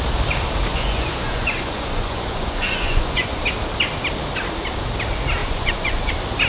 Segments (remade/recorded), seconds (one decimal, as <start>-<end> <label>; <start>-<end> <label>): 0.0-0.7 recorded; 0.7-3.4 remade; 3.4-5.4 recorded; 5.4-6.1 remade; 6.1-6.5 recorded